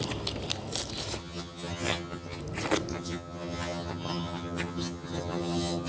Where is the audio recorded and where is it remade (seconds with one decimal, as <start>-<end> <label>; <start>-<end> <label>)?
0.0-1.2 recorded; 1.2-2.4 remade; 2.4-2.9 recorded; 2.9-5.9 remade